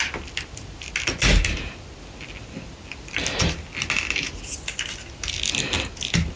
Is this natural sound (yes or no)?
yes